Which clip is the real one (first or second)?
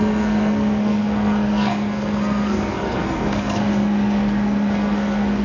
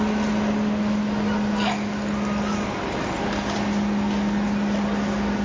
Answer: second